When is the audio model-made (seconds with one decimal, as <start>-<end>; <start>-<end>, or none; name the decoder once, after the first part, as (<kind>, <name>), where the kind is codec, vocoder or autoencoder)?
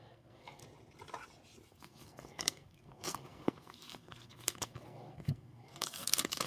0.0-0.6 (codec, SNAC); 1.7-6.5